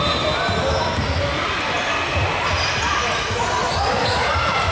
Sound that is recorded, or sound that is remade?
recorded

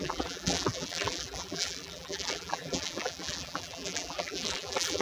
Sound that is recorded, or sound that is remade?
remade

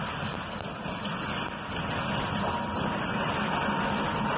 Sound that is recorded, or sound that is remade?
recorded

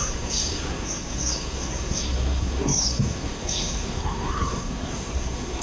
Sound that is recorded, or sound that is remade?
remade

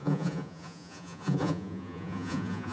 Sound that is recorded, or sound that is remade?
remade